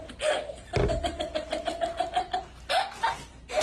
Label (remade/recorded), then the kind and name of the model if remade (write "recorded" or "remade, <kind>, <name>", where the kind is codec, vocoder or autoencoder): recorded